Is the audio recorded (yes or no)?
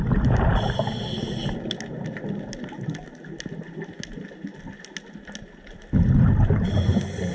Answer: yes